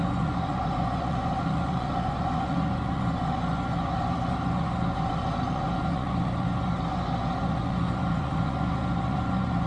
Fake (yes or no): yes